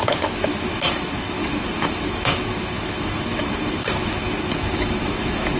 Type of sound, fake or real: fake